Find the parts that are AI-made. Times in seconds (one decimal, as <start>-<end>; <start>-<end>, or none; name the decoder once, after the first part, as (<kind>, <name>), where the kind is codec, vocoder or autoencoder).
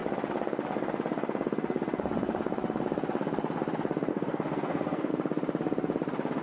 4.1-5.1 (codec, SNAC)